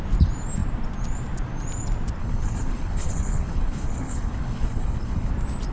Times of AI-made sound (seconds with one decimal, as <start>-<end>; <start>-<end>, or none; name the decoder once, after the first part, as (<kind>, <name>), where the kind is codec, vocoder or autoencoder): 2.2-5.3 (codec, HILCodec)